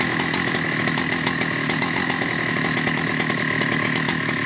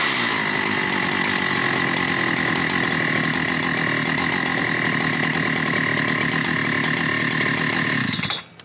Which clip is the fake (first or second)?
first